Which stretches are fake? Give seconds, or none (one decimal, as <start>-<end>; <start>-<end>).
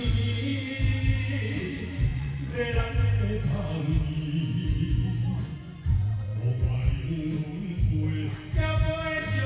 2.1-2.8; 5.3-6.9